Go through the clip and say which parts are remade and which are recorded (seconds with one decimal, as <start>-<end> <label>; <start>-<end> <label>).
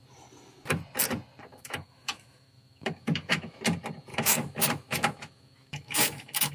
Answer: 0.0-1.5 recorded; 1.5-3.6 remade; 3.6-4.1 recorded; 4.1-6.5 remade